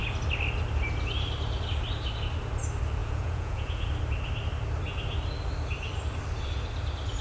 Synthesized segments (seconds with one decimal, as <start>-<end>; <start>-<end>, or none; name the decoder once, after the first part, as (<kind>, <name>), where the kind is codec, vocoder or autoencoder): 3.0-3.9 (vocoder, Vocos)